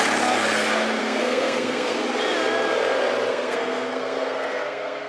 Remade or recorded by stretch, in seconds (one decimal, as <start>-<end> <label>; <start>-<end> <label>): 0.0-1.0 recorded; 1.0-2.0 remade; 2.0-3.3 recorded; 3.3-5.1 remade